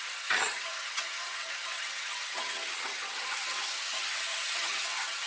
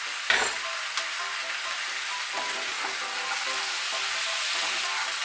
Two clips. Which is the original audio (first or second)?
second